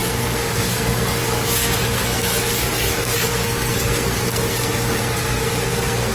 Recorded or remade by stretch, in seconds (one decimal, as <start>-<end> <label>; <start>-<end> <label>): 0.0-6.1 remade

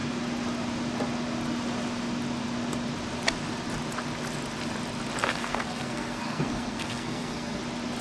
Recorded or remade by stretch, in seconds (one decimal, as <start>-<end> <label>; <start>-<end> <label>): 0.0-5.2 recorded; 5.2-7.6 remade; 7.6-8.0 recorded